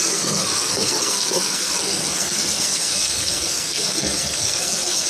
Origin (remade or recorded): remade